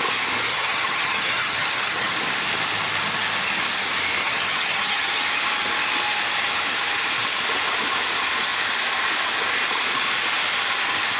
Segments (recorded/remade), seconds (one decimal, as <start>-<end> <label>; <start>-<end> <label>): 0.0-0.5 recorded; 0.5-2.1 remade; 2.1-4.2 recorded; 4.2-5.2 remade; 5.2-11.2 recorded